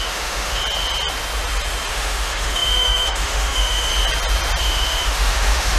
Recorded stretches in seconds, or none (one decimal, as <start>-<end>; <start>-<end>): 0.6-1.9; 3.9-4.6